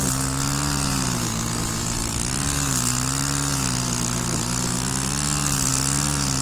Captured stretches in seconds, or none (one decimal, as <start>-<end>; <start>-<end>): 0.0-6.4

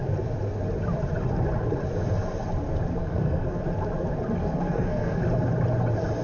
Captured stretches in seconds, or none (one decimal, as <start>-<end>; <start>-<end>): 0.0-3.0; 3.6-4.4; 5.2-6.2